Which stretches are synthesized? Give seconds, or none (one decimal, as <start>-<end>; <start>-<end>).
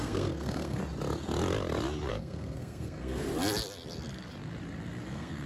0.0-0.8; 2.1-3.3; 5.1-5.5